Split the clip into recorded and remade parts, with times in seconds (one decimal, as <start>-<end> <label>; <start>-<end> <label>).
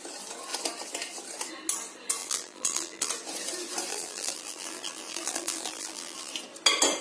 0.0-2.2 recorded; 2.2-3.1 remade; 3.1-3.9 recorded; 3.9-6.3 remade; 6.3-7.0 recorded